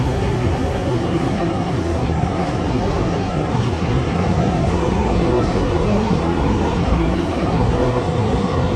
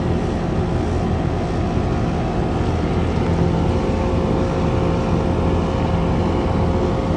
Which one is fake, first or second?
first